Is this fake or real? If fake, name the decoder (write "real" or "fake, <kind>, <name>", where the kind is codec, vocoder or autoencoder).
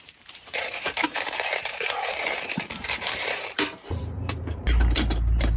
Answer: fake, vocoder, BigVGAN v2